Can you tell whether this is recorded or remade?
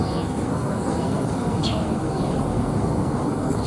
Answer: remade